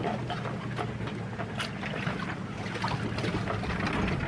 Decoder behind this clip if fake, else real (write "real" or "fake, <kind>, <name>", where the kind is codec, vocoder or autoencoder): real